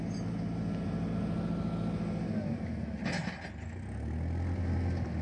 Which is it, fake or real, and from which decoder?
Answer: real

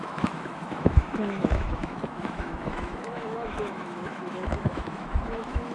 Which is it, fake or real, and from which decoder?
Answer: fake, autoencoder, DAC-VAE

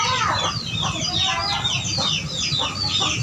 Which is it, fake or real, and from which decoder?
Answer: real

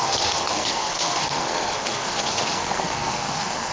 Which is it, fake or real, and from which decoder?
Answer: fake, codec, SNAC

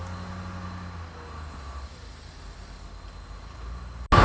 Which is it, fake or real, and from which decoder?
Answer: real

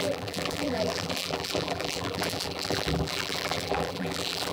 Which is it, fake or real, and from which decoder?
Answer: fake, vocoder, BigVGAN v2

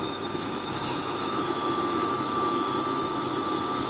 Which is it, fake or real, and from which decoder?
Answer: fake, autoencoder, DAC-VAE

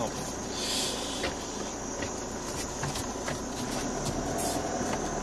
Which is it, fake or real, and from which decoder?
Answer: real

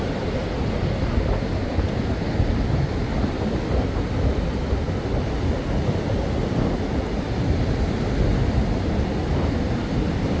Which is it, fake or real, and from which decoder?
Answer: real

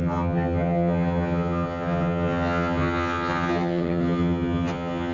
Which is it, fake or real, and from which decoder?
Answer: fake, vocoder, HiFi-GAN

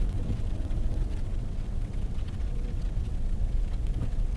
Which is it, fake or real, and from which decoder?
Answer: fake, vocoder, WaveNeXt